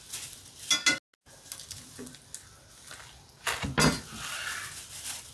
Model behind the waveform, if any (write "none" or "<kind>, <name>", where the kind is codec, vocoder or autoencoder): none